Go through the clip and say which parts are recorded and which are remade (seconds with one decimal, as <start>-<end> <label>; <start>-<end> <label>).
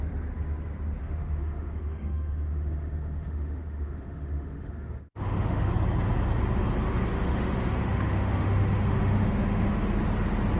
0.0-1.0 recorded; 1.0-5.7 remade; 5.7-7.1 recorded; 7.1-9.7 remade; 9.7-10.6 recorded